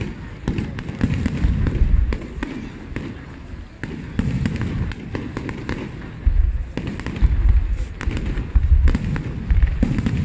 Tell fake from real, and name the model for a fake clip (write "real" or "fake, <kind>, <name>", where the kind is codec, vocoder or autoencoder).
real